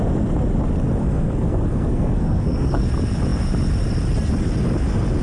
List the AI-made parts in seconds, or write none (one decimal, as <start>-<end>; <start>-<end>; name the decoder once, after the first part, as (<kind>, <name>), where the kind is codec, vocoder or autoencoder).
1.0-2.8 (codec, SNAC)